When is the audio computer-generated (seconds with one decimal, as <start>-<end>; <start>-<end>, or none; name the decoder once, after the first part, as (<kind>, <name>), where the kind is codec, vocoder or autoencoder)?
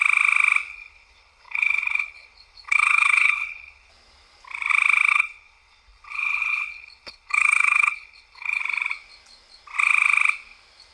0.7-3.9 (codec, HILCodec); 5.1-8.6